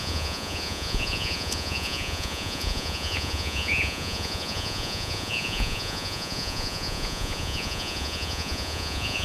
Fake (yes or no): yes